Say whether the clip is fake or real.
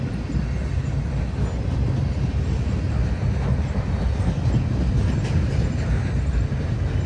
real